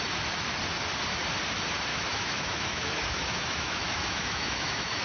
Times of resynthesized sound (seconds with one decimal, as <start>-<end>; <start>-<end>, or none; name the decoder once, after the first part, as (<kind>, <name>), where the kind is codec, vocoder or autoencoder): 1.9-5.0 (autoencoder, DAC-VAE)